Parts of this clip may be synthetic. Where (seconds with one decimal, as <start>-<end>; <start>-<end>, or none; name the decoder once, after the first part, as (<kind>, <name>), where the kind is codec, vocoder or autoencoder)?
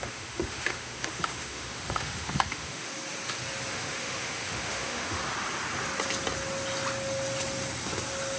0.0-2.9 (autoencoder, DAC-VAE); 3.7-5.2